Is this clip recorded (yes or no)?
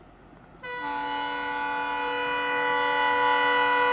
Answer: yes